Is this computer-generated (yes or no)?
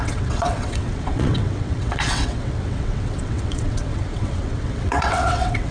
yes